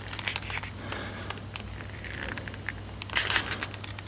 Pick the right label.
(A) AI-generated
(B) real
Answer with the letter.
B